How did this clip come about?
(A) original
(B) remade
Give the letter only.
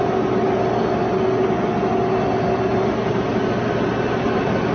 A